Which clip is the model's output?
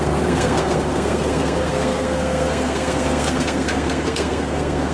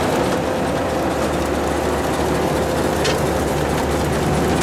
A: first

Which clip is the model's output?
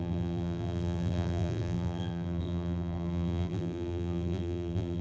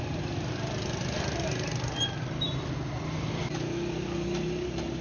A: first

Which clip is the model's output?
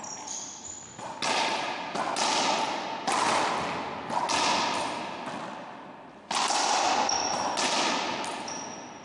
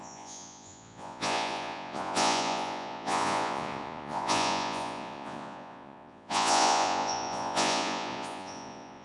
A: second